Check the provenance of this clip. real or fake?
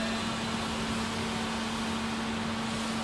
real